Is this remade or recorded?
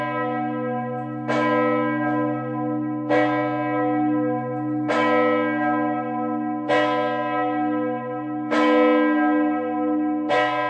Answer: recorded